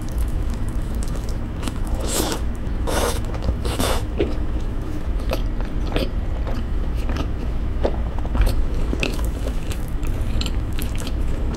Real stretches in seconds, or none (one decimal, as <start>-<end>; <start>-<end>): 5.4-6.6; 10.0-10.5